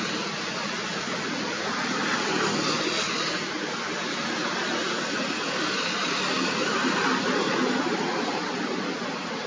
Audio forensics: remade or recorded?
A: recorded